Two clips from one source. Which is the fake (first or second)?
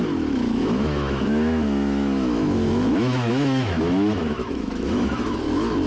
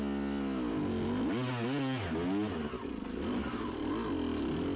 first